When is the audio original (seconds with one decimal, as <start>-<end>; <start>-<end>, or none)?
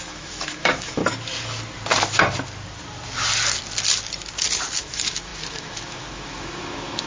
1.0-4.8